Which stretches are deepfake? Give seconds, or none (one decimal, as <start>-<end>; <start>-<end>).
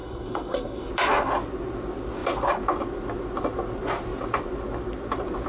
0.0-0.9